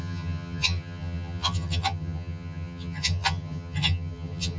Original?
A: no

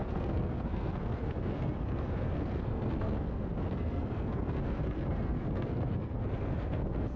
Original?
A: no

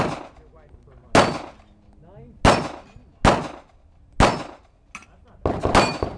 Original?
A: yes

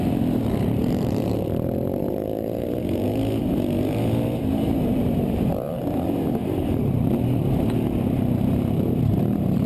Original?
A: no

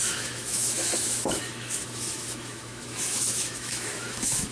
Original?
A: no